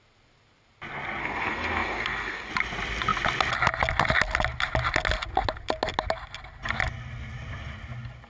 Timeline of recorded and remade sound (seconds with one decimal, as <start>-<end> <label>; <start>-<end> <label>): 0.0-1.2 recorded; 1.2-2.5 remade; 2.5-8.3 recorded